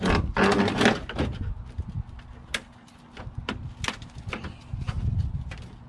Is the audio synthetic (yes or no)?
no